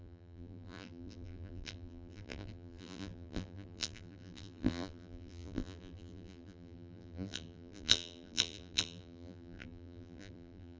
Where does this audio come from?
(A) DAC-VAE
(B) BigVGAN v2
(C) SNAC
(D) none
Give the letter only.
B